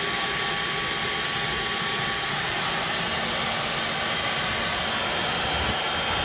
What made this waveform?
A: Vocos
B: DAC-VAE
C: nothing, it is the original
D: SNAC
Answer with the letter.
C